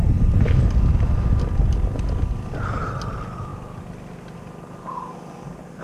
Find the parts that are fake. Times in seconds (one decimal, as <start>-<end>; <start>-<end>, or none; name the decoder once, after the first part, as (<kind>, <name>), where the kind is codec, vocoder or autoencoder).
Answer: none